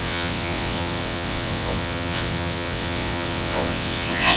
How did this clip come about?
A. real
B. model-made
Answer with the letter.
B